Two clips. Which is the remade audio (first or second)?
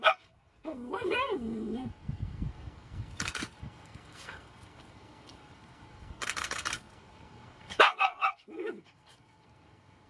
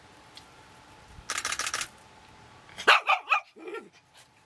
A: first